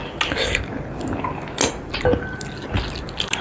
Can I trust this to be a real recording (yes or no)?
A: yes